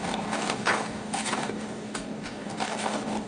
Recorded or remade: remade